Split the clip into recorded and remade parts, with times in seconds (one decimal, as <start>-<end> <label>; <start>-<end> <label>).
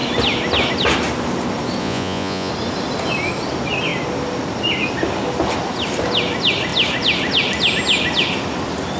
0.0-1.8 recorded; 1.8-2.5 remade; 2.5-9.0 recorded